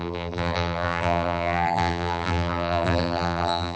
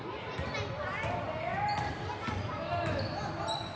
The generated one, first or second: first